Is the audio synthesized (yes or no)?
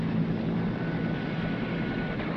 no